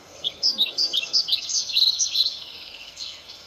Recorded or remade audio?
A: remade